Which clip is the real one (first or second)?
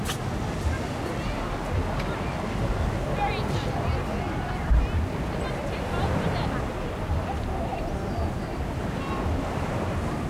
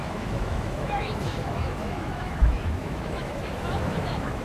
first